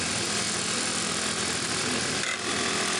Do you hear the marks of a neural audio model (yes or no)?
no